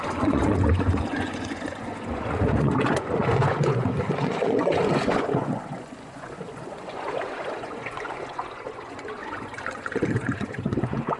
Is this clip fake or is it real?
fake